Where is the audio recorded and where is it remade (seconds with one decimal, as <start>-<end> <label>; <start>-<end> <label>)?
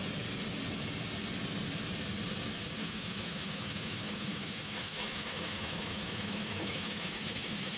0.0-2.8 recorded; 2.8-7.8 remade